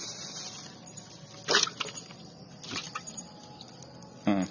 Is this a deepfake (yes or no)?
no